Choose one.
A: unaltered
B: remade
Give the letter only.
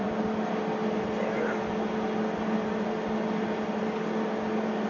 A